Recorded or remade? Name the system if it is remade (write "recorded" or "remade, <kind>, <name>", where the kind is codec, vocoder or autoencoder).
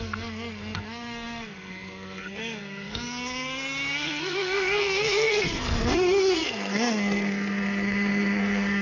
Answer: remade, codec, SNAC